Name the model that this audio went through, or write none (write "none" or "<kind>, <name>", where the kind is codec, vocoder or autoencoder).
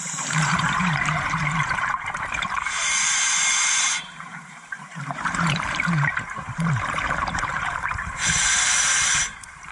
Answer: vocoder, BigVGAN v2